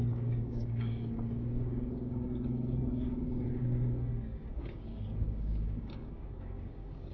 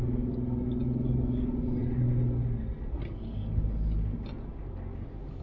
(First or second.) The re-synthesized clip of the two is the first